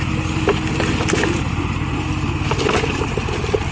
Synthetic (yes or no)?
no